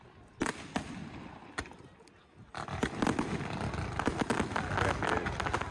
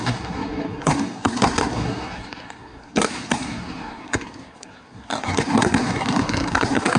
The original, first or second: first